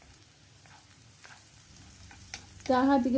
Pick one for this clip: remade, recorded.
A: recorded